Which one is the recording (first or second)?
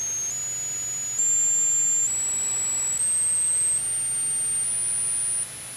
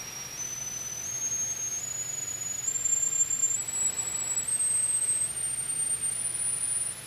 first